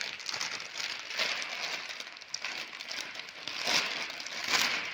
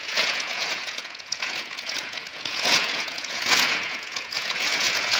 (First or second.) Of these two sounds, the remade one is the second